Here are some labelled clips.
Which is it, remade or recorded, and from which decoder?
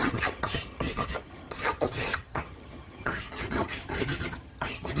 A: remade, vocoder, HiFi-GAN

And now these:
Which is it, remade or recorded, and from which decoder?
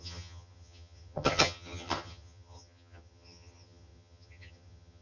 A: remade, vocoder, HiFi-GAN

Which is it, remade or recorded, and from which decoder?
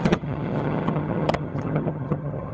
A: remade, vocoder, HiFi-GAN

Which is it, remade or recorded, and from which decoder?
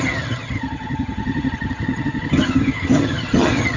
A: remade, vocoder, HiFi-GAN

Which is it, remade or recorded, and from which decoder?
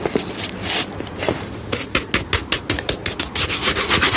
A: recorded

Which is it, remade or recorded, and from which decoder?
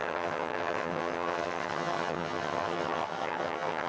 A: remade, vocoder, HiFi-GAN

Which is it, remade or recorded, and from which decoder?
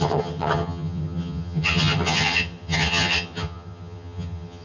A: remade, vocoder, HiFi-GAN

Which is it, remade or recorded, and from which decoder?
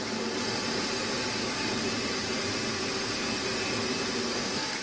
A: recorded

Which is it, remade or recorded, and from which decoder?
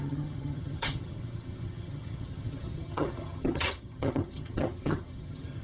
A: remade, vocoder, HiFi-GAN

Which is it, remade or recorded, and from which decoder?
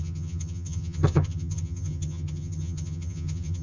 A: remade, vocoder, HiFi-GAN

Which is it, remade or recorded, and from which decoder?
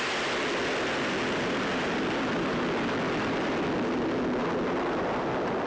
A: recorded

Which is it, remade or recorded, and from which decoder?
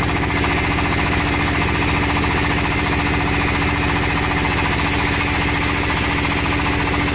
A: recorded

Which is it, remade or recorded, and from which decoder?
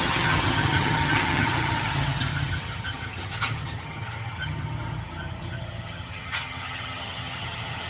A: remade, vocoder, HiFi-GAN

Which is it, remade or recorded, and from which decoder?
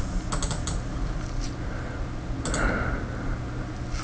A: recorded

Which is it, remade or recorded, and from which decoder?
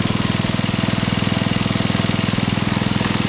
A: recorded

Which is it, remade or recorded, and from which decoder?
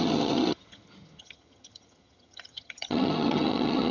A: remade, vocoder, HiFi-GAN